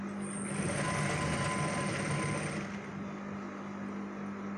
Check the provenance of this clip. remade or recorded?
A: recorded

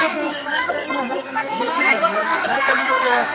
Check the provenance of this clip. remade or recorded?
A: remade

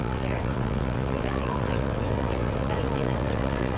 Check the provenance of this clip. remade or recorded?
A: remade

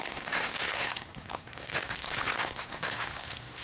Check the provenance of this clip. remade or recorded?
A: remade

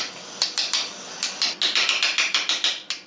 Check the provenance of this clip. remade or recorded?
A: recorded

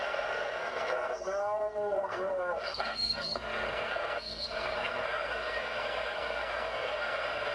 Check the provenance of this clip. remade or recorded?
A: remade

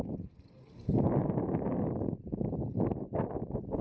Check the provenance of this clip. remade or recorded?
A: recorded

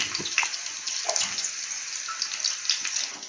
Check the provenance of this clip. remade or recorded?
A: recorded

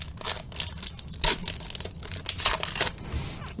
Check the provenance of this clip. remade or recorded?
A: recorded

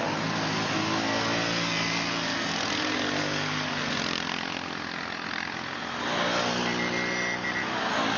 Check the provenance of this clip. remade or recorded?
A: recorded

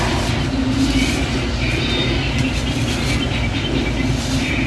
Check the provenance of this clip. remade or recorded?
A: recorded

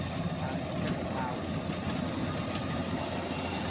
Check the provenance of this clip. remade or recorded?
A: recorded